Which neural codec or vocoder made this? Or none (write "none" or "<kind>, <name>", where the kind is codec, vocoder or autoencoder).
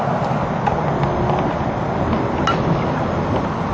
none